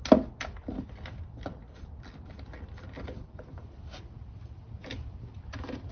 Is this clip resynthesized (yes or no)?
no